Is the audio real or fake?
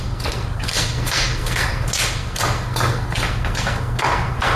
fake